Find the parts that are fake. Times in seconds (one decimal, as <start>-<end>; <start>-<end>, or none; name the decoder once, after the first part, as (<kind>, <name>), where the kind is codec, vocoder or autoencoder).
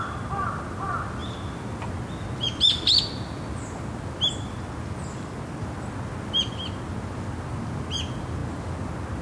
none